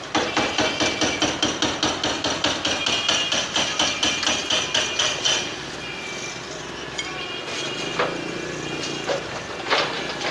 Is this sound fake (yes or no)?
no